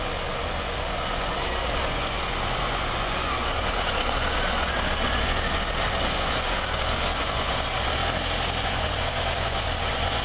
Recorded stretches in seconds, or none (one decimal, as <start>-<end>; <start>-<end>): 8.0-8.6